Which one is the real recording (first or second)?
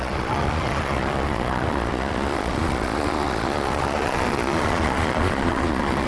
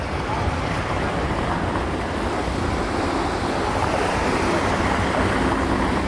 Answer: second